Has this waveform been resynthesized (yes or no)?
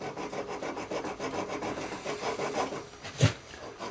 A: no